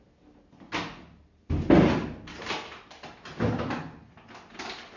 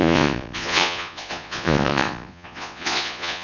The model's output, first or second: second